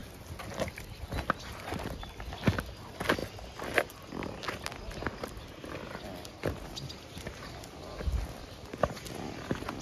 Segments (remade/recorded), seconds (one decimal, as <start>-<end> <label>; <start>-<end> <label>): 0.0-9.8 recorded